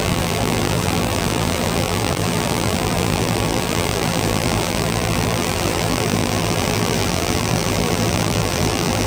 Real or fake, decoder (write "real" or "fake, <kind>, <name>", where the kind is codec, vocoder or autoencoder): fake, vocoder, BigVGAN v2